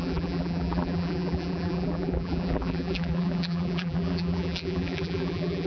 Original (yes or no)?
no